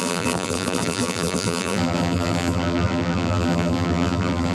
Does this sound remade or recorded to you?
remade